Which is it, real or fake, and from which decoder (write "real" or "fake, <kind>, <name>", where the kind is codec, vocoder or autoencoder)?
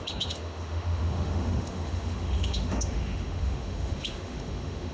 fake, autoencoder, DAC-VAE